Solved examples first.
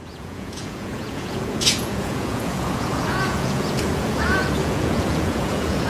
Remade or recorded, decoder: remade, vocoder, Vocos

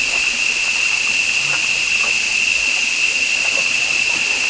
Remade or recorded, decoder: recorded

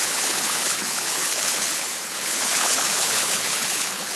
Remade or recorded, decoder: remade, codec, HILCodec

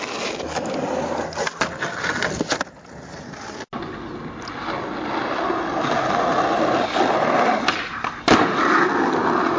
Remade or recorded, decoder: recorded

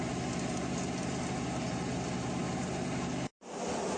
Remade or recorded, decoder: recorded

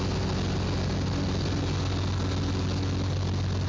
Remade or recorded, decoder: recorded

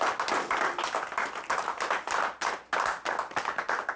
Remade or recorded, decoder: recorded